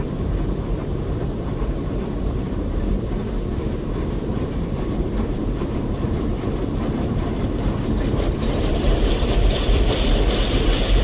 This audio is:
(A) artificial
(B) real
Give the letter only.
A